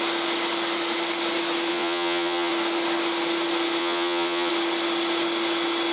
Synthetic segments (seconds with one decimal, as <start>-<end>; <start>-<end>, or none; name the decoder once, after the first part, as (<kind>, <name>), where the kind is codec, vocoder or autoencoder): 1.7-2.5 (vocoder, Vocos); 3.8-4.5